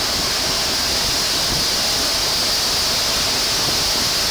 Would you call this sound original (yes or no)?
yes